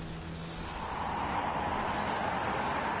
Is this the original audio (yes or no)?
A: yes